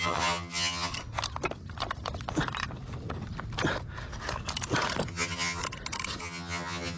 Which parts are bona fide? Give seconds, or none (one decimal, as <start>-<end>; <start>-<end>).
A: 0.9-5.1; 5.6-6.2